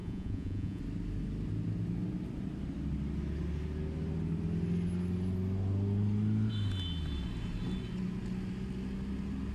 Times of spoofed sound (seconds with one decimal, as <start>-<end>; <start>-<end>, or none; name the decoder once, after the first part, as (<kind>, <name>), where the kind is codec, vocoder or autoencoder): 0.0-0.8 (vocoder, Vocos)